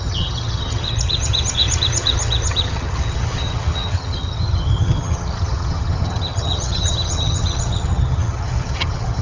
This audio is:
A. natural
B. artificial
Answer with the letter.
B